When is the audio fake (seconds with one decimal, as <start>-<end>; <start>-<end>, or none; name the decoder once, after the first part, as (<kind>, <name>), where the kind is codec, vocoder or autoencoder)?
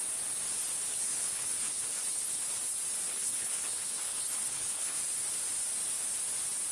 0.9-2.4 (codec, HILCodec); 3.1-5.0